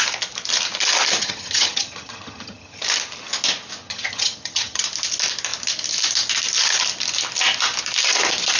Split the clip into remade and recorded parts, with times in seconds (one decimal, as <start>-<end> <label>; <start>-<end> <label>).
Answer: 0.0-1.2 recorded; 1.2-2.8 remade; 2.8-3.8 recorded; 3.8-4.8 remade; 4.8-8.6 recorded